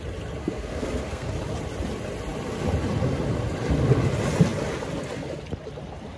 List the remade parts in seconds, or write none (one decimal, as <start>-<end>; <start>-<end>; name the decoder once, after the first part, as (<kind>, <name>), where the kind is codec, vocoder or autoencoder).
0.4-1.3 (codec, SNAC)

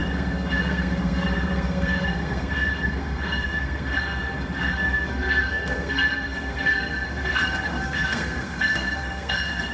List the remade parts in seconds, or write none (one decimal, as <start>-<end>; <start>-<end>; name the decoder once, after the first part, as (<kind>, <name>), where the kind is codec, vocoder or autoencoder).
0.0-9.7 (codec, SNAC)

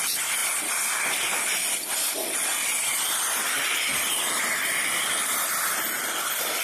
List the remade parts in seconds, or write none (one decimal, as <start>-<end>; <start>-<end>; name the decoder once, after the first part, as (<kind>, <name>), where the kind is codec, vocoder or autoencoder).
none

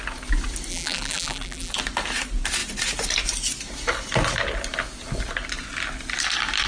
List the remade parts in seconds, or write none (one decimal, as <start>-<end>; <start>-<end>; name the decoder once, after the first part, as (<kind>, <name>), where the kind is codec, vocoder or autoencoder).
0.7-1.7 (vocoder, BigVGAN v2)